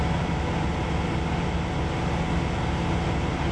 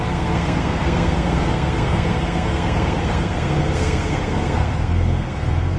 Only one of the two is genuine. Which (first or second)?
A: first